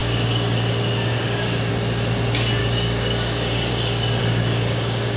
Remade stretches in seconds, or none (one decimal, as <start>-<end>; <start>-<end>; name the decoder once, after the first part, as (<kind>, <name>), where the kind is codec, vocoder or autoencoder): 0.0-1.7 (codec, DAC); 2.6-3.7; 4.2-5.2

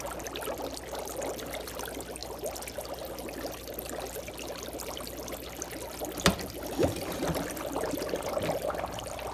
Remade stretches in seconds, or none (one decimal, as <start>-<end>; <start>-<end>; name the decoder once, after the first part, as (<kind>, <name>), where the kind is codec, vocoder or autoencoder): none

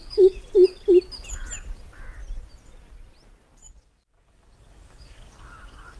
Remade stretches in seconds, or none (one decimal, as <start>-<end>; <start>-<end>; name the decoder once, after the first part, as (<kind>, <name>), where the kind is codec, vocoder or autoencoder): 0.0-0.4 (codec, DAC); 3.7-6.0

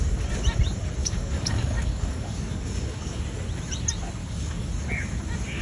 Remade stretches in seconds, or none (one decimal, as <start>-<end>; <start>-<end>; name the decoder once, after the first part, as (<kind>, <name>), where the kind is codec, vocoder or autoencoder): 1.0-3.2 (codec, DAC); 4.2-4.7